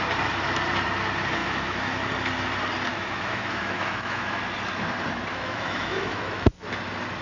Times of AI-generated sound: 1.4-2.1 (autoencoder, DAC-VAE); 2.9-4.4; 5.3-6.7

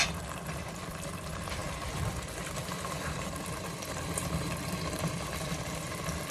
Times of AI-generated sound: 0.0-6.3 (vocoder, BigVGAN v2)

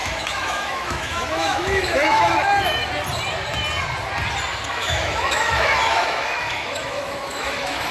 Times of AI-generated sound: 0.0-2.8 (autoencoder, DAC-VAE); 4.7-7.9

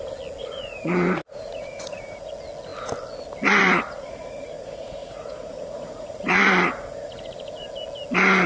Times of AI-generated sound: 0.4-2.3 (vocoder, Vocos); 3.6-7.7

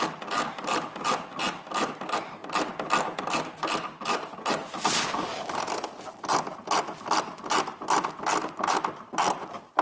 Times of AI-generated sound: none